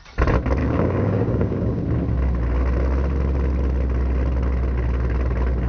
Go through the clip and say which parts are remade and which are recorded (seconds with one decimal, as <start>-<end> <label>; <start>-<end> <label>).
0.0-0.6 recorded; 0.6-1.8 remade; 1.8-5.7 recorded